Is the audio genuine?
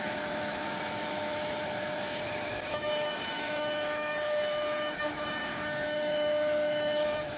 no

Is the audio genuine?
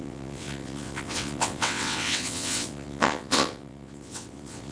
no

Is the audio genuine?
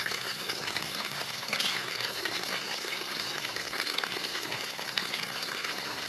no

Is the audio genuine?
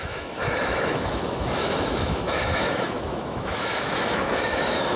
no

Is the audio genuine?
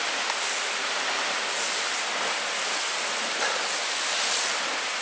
yes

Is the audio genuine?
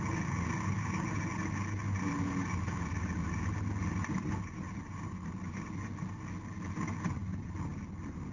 yes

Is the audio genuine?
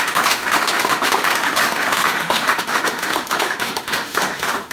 no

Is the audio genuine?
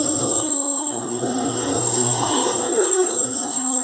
no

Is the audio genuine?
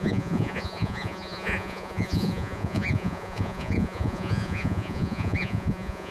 no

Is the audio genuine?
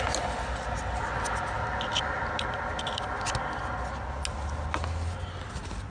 yes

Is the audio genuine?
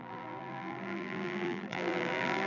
no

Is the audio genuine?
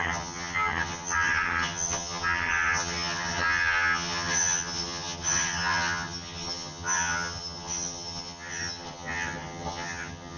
no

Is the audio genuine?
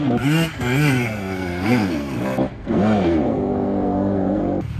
no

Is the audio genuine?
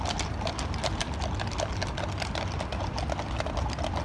yes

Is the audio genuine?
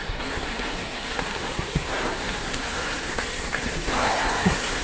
no